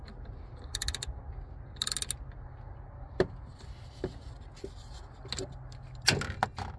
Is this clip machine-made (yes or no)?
no